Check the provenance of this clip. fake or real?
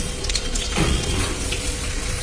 fake